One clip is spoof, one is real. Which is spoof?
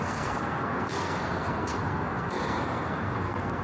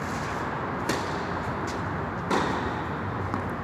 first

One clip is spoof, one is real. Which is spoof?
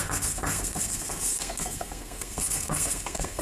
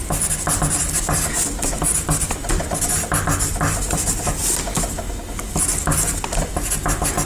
first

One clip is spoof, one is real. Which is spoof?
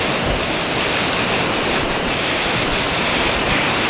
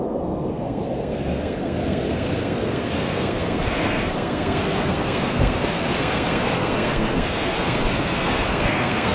second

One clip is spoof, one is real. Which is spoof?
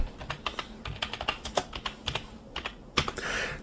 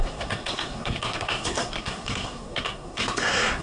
second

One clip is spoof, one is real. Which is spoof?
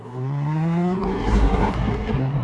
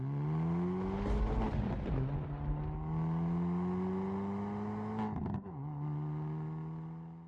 first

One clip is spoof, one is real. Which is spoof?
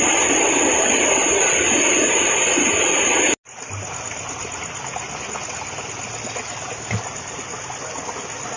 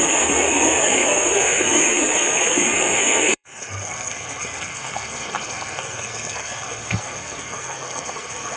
second